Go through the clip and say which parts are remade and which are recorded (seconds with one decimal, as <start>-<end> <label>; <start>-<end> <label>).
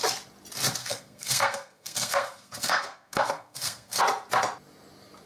0.0-0.8 recorded; 0.8-4.0 remade; 4.0-5.3 recorded